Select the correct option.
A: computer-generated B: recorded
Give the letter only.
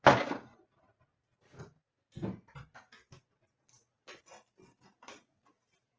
B